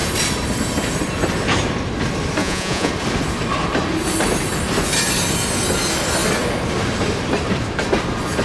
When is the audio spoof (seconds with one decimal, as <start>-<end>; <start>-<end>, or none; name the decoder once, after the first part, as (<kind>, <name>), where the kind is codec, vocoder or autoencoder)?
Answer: 2.4-2.9 (vocoder, Vocos)